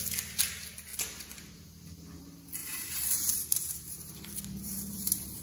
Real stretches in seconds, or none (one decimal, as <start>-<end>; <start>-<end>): 0.0-2.6